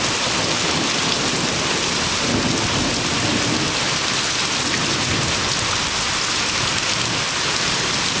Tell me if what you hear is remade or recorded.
recorded